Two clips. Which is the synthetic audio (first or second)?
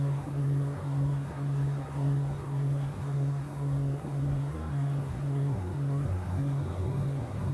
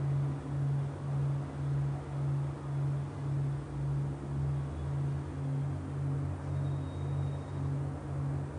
first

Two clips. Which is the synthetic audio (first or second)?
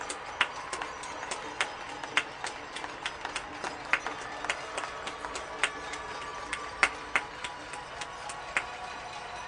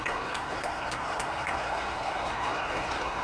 second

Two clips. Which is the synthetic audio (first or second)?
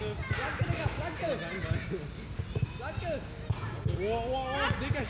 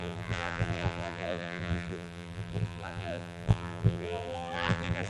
second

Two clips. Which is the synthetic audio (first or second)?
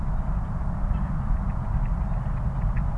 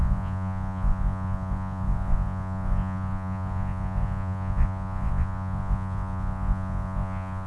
second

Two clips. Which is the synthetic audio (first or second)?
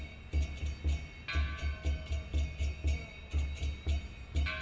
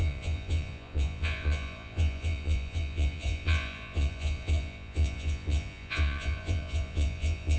second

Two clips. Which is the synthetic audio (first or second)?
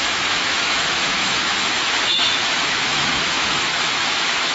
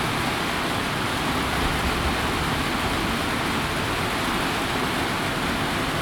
first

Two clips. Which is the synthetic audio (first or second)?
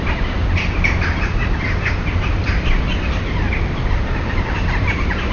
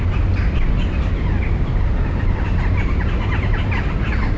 first